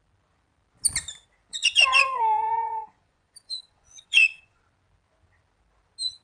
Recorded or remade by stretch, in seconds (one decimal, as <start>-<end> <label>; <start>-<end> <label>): 0.0-1.5 recorded; 1.5-4.6 remade; 4.6-6.2 recorded